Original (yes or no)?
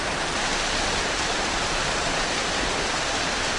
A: yes